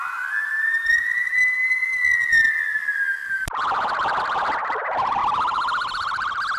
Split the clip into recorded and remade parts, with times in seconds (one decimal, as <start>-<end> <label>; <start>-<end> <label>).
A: 0.0-6.6 recorded